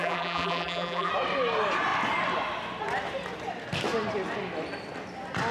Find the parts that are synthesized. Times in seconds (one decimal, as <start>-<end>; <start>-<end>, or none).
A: 0.0-1.1